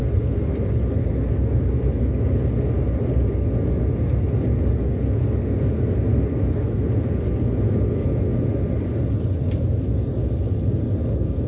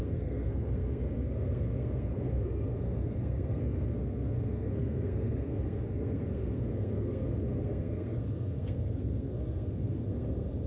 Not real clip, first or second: second